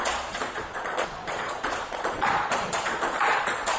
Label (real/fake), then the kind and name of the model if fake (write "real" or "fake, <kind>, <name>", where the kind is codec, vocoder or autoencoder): fake, vocoder, Vocos